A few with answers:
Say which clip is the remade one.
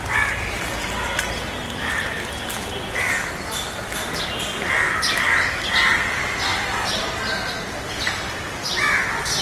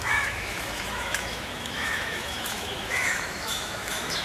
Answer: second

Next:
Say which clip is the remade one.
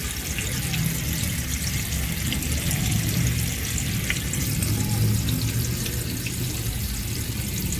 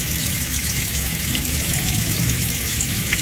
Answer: second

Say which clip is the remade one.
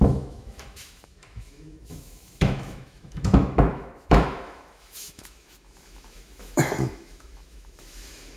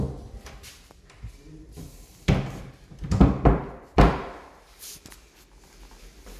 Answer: first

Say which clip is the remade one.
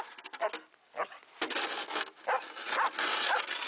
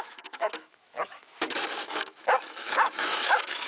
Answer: second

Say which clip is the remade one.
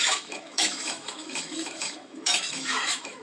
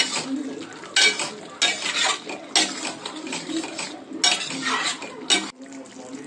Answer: first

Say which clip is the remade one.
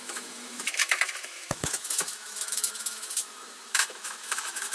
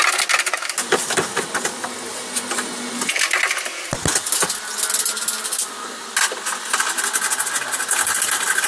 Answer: first